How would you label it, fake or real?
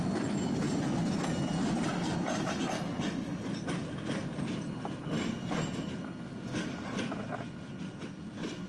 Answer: real